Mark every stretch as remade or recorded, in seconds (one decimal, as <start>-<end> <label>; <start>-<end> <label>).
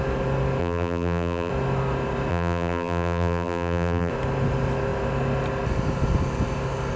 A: 0.0-0.6 recorded; 0.6-1.5 remade; 1.5-2.3 recorded; 2.3-4.1 remade; 4.1-7.0 recorded